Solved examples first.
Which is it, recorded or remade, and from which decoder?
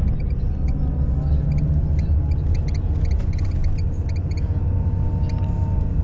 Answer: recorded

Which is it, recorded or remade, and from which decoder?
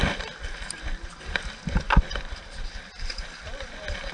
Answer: recorded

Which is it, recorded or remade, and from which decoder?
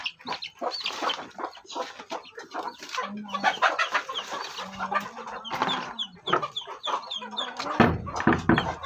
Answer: recorded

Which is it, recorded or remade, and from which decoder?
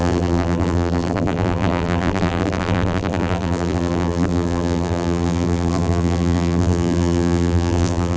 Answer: remade, vocoder, BigVGAN v2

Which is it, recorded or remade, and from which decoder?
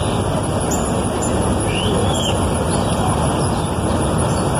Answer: remade, vocoder, BigVGAN v2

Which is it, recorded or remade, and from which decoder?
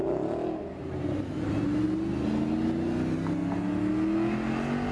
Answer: recorded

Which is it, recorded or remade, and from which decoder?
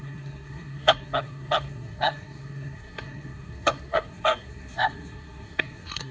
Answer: remade, codec, SNAC